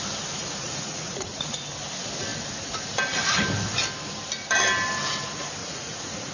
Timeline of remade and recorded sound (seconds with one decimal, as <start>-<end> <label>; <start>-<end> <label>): 0.0-0.4 recorded; 0.4-1.6 remade; 1.6-5.6 recorded; 5.6-6.3 remade